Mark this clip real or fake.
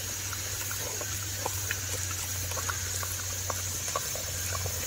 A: real